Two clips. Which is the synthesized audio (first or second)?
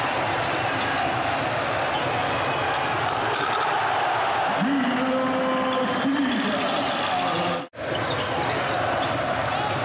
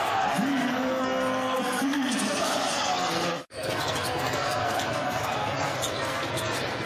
second